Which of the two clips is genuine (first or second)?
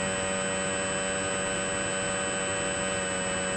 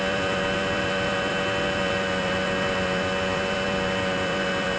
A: first